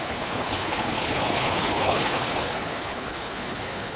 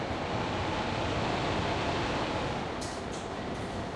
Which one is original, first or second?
second